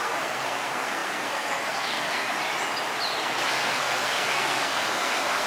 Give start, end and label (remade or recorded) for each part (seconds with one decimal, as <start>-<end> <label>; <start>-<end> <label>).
0.0-2.4 remade; 2.4-3.2 recorded; 3.2-5.5 remade